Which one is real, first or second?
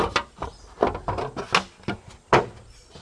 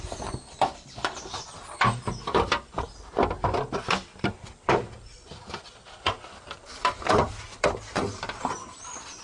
first